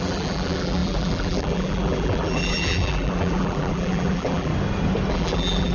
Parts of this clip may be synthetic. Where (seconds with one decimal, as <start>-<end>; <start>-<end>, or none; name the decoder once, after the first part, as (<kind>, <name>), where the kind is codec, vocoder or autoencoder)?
0.0-4.5 (vocoder, BigVGAN v2); 5.1-5.7